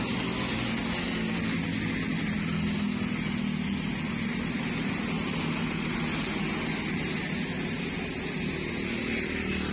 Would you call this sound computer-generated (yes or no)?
no